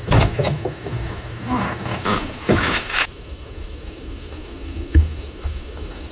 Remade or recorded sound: remade